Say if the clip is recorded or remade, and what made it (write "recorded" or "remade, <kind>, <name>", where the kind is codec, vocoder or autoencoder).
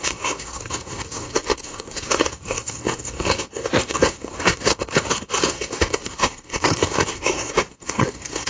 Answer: remade, codec, SNAC